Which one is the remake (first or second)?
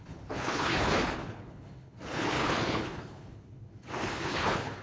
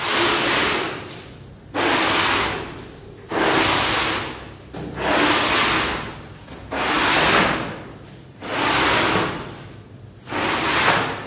first